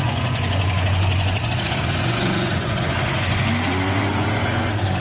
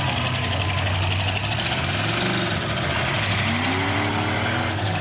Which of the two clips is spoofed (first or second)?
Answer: first